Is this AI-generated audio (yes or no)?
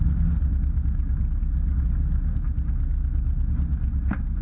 no